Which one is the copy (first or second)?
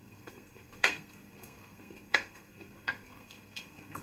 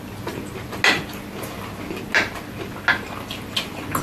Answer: first